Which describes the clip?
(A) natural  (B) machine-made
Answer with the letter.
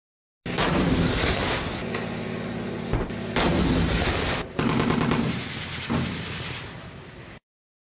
A